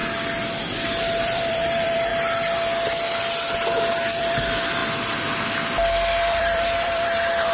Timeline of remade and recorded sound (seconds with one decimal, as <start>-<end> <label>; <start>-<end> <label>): 0.0-1.2 recorded; 1.2-2.1 remade; 2.1-3.9 recorded; 3.9-4.8 remade; 4.8-6.2 recorded; 6.2-7.5 remade